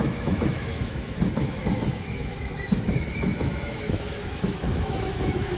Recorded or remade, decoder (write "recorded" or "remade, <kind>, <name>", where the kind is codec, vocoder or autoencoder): remade, autoencoder, DAC-VAE